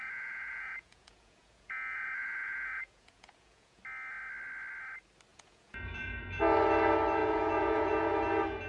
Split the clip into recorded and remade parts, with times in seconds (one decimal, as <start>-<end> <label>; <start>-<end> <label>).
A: 0.0-3.8 remade; 3.8-5.3 recorded; 5.3-6.4 remade; 6.4-7.2 recorded; 7.2-8.1 remade; 8.1-8.7 recorded